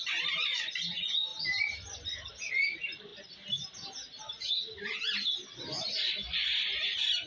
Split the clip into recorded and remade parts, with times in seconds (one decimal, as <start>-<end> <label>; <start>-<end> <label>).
0.0-7.3 recorded